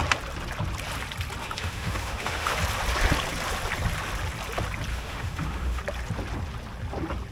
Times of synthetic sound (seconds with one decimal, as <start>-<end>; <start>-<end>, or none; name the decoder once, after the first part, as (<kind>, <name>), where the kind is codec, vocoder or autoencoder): 1.4-2.5 (autoencoder, DAC-VAE); 4.9-5.8